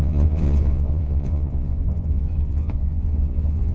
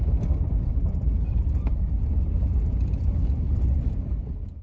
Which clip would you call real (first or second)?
second